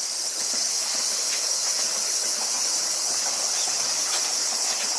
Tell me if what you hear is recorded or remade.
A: remade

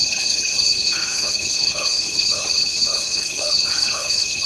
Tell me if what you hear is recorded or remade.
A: remade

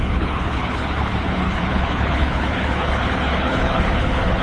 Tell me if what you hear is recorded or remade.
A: remade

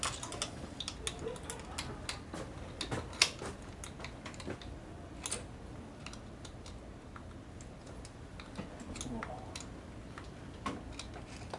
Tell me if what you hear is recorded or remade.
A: recorded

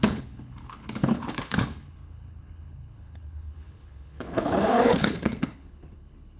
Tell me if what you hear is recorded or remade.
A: remade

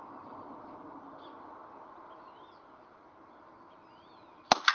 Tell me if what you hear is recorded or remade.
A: recorded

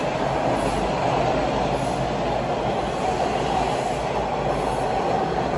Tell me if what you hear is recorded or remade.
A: recorded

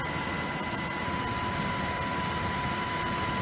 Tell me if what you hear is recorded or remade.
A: recorded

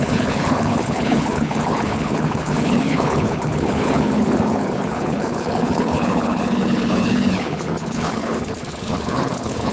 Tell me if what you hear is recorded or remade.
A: remade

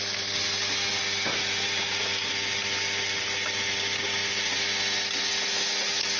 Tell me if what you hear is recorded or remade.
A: recorded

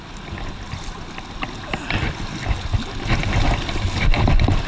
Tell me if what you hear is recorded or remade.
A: recorded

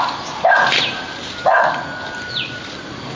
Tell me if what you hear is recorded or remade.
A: recorded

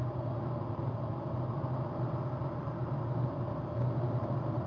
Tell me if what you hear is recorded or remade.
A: recorded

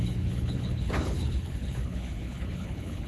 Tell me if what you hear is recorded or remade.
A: remade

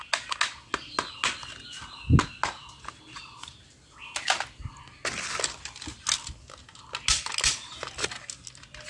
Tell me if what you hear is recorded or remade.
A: recorded